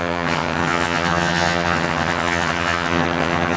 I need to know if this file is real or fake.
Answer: fake